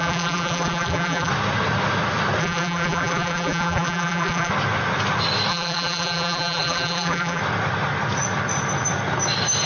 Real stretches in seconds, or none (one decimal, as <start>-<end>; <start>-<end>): 1.3-2.4; 4.5-5.5; 7.4-9.7